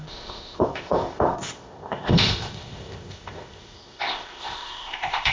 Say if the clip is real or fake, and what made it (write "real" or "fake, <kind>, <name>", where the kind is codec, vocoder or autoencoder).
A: fake, codec, ZipCodec